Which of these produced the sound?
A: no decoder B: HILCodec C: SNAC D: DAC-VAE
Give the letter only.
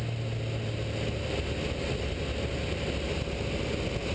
A